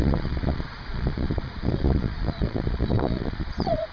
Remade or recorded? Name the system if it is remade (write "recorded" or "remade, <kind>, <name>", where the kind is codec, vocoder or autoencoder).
remade, vocoder, Vocos